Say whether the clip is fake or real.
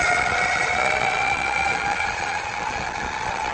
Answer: fake